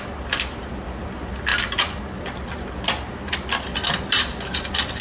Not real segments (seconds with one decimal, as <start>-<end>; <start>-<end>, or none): none